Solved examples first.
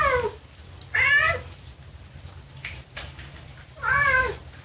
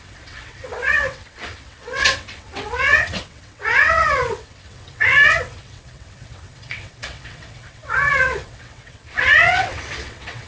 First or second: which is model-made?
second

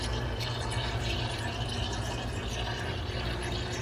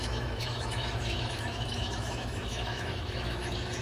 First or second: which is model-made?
second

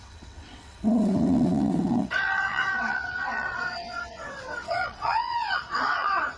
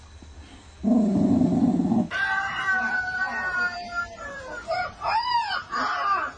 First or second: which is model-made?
first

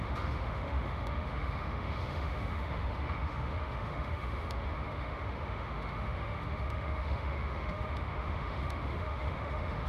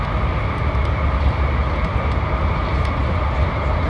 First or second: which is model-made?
first